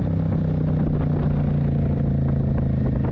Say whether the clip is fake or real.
real